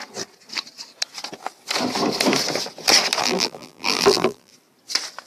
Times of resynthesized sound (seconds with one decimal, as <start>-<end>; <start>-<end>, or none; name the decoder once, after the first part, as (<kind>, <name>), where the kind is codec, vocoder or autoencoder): 3.2-4.5 (vocoder, BigVGAN v2)